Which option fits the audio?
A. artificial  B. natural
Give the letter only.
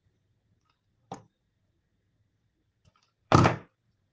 A